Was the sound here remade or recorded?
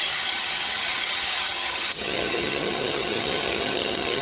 remade